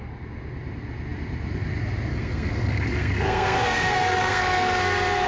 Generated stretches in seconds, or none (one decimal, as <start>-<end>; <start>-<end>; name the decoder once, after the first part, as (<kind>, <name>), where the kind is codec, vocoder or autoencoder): 2.1-5.3 (codec, SNAC)